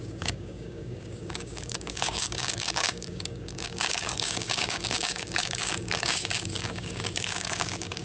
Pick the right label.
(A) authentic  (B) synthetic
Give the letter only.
B